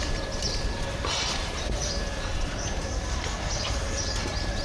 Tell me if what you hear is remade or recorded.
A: remade